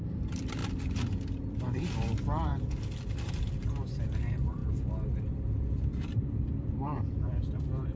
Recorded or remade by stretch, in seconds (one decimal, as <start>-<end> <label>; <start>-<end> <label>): 0.0-0.6 remade; 0.6-1.5 recorded; 1.5-2.5 remade; 2.5-3.1 recorded; 3.1-4.6 remade; 4.6-5.7 recorded; 5.7-8.0 remade